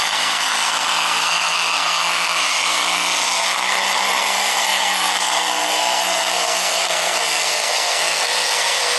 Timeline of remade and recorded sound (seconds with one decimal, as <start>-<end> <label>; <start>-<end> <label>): 0.0-9.0 remade

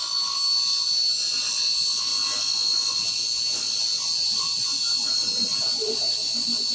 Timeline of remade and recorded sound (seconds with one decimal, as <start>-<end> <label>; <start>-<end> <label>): 0.0-6.7 recorded

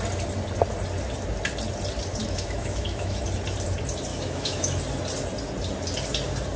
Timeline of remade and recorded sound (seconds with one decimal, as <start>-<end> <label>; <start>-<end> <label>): 0.0-2.2 recorded; 2.2-3.2 remade; 3.2-4.1 recorded; 4.1-4.8 remade; 4.8-6.6 recorded

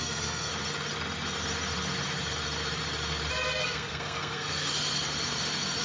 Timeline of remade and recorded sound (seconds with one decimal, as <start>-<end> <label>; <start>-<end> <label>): 0.0-0.5 remade; 0.5-3.6 recorded; 3.6-4.7 remade; 4.7-5.8 recorded

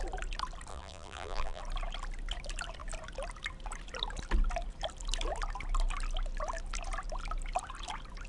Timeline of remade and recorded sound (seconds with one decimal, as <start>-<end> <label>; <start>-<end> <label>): 0.0-0.7 recorded; 0.7-1.6 remade; 1.6-8.3 recorded

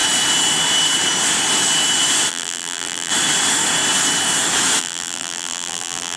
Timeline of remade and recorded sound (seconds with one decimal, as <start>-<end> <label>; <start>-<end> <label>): 0.0-2.3 recorded; 2.3-3.1 remade; 3.1-4.8 recorded; 4.8-6.2 remade

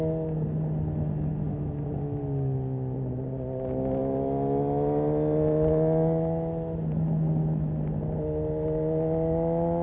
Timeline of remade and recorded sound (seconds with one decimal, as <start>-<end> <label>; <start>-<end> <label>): 0.0-9.8 recorded

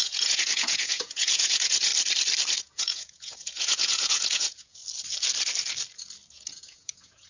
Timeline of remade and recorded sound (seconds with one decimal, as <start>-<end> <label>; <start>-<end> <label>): 0.0-1.9 remade; 1.9-2.6 recorded; 2.6-4.8 remade; 4.8-6.3 recorded; 6.3-7.3 remade